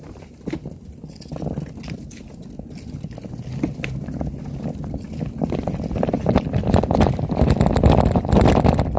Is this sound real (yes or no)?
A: yes